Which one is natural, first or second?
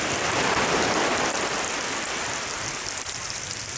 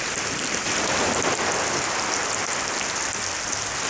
second